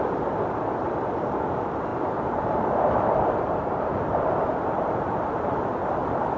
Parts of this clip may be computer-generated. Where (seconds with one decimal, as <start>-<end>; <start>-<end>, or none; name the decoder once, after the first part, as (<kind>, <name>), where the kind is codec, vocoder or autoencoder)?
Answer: 1.9-4.3 (vocoder, BigVGAN v2)